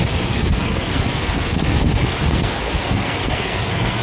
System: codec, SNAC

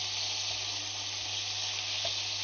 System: none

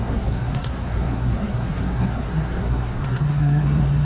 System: codec, SNAC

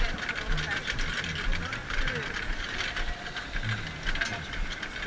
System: none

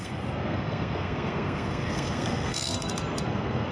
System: codec, SNAC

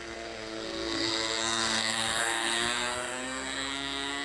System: codec, SNAC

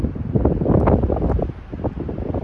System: none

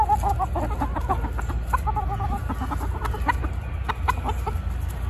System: none